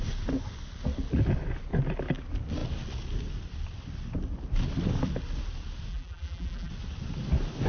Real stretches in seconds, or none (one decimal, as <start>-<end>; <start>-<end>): 0.0-5.9; 6.7-7.7